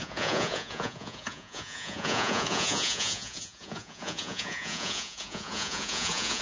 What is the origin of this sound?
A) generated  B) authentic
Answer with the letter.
A